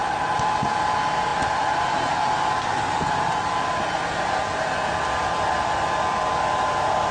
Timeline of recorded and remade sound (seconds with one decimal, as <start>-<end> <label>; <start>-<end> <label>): 0.0-1.3 recorded; 1.3-2.5 remade; 2.5-7.1 recorded